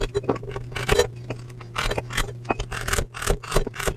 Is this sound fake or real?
fake